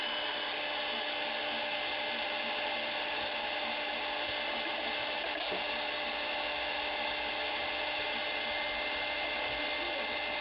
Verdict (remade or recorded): recorded